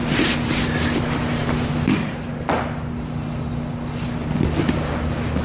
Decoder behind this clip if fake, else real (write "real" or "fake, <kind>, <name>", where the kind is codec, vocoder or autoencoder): real